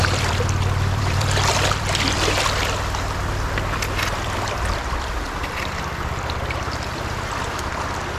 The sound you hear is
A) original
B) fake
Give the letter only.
B